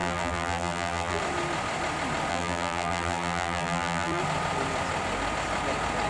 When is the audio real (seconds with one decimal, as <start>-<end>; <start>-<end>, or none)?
1.2-2.3; 4.2-6.1